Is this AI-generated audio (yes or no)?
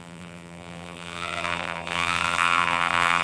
yes